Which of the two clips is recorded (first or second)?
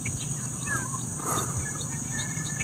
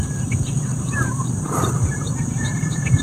first